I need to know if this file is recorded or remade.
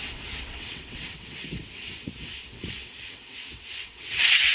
remade